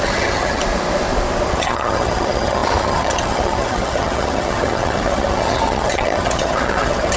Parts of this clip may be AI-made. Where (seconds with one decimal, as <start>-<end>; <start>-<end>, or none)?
0.0-0.6; 1.5-7.2